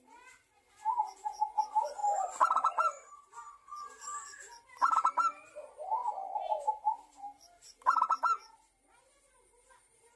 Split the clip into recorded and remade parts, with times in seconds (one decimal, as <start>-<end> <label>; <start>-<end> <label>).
0.0-2.0 recorded; 2.0-3.1 remade; 3.1-10.2 recorded